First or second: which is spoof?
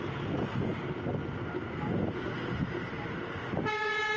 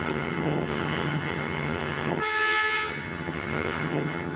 second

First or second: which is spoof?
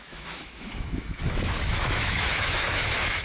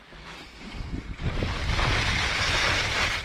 first